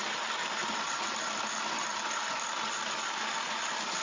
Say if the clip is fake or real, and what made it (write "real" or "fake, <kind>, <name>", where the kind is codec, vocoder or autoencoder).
real